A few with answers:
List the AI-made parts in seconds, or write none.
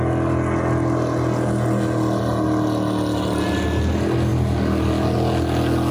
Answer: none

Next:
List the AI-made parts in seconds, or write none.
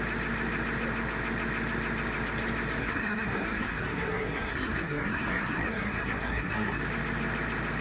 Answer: 2.8-6.8 (codec, SNAC)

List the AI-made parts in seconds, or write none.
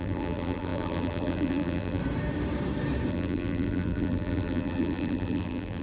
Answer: 0.0-2.0 (vocoder, BigVGAN v2); 3.1-5.8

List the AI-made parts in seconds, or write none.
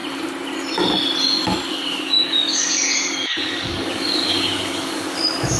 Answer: 1.7-5.6 (codec, DAC)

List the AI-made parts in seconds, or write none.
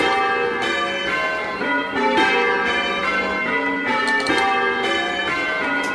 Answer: none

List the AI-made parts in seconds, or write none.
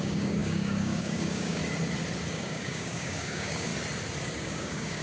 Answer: 0.0-1.6 (codec, DAC); 2.3-3.7; 4.2-5.0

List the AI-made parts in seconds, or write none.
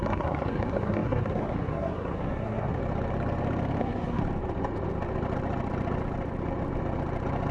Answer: 0.0-2.8 (codec, SNAC); 3.8-4.2